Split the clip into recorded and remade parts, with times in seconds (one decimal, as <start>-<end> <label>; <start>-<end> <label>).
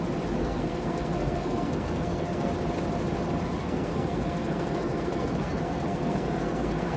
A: 0.0-0.4 recorded; 0.4-2.5 remade; 2.5-3.6 recorded; 3.6-7.0 remade